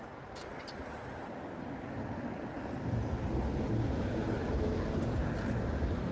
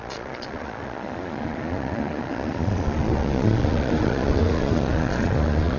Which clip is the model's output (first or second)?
second